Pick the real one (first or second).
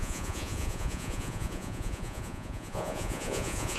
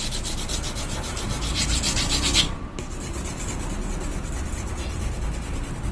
second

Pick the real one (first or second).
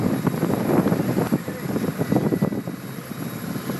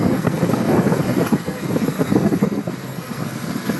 first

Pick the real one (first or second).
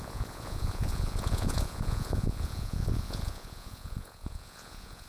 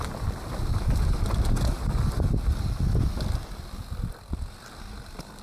second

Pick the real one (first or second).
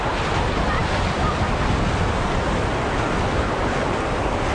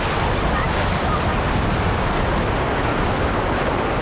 second